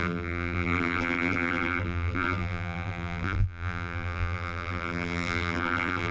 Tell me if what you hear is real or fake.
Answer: fake